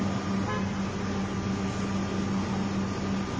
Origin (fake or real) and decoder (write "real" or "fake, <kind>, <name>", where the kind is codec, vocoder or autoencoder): real